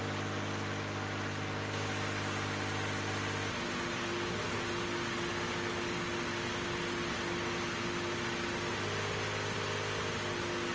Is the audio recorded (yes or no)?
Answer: yes